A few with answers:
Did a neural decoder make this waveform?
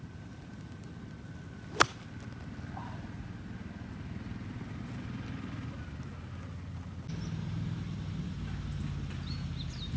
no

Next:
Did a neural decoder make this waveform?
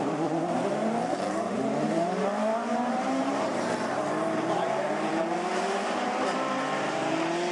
yes